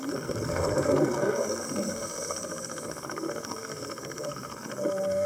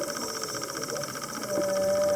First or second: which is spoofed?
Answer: first